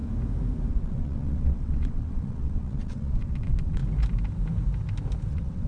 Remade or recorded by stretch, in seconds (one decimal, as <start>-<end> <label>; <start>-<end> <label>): 0.0-0.7 recorded; 0.7-3.8 remade; 3.8-5.3 recorded; 5.3-5.7 remade